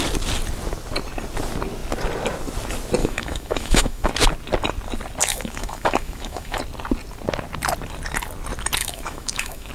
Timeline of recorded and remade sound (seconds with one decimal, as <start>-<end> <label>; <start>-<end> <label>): 0.0-3.0 recorded; 3.0-4.1 remade; 4.1-5.3 recorded; 5.3-6.6 remade; 6.6-8.8 recorded; 8.8-9.7 remade